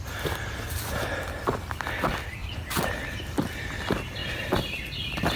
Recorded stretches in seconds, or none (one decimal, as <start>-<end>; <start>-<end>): 0.0-2.4; 3.0-5.4